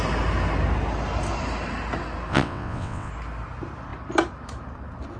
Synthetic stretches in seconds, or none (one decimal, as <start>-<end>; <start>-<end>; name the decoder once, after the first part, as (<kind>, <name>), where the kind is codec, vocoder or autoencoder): 2.3-3.1 (vocoder, WaveNeXt)